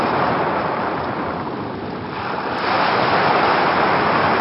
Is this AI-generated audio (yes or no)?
no